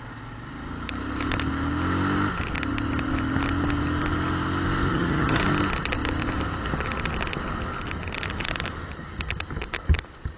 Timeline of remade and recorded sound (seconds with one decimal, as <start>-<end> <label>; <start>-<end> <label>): 0.0-4.9 recorded; 4.9-5.4 remade; 5.4-10.4 recorded